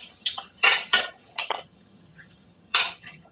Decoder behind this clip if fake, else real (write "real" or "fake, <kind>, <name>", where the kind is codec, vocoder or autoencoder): fake, vocoder, HiFi-GAN